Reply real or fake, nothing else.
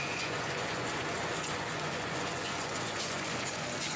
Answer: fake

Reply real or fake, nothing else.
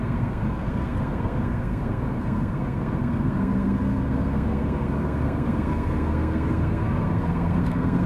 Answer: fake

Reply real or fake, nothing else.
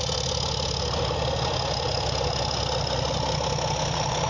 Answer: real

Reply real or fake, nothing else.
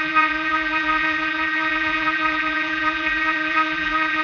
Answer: fake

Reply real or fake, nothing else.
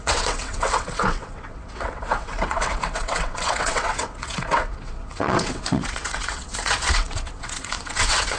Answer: fake